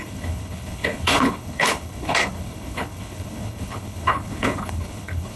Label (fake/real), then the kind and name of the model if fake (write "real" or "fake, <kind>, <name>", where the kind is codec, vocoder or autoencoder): fake, codec, HILCodec